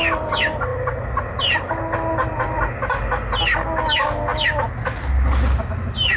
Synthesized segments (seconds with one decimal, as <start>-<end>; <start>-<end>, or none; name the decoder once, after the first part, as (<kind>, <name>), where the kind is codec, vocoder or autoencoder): none